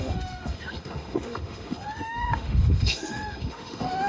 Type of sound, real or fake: fake